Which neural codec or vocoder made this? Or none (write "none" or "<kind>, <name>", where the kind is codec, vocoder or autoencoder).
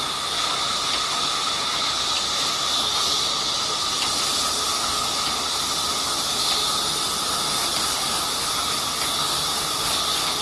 none